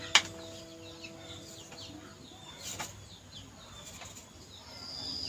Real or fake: real